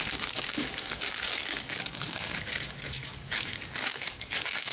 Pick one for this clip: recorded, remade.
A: remade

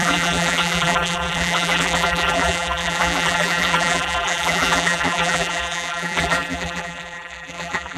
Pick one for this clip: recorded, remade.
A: remade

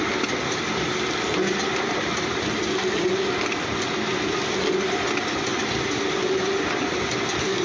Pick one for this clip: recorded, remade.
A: recorded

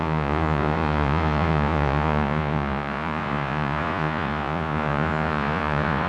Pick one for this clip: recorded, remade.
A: remade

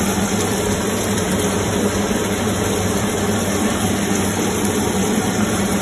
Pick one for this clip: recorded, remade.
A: remade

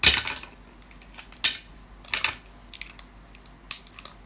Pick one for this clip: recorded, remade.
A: recorded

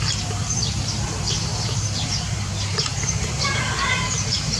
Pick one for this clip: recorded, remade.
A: remade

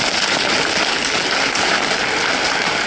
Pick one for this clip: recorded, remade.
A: recorded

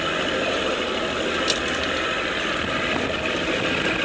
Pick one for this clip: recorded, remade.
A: recorded